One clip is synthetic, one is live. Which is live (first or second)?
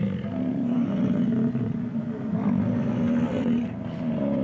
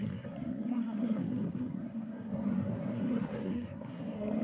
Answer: first